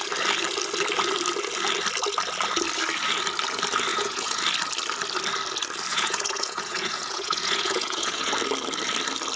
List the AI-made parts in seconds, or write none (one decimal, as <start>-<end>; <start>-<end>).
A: 3.9-4.4; 5.9-8.3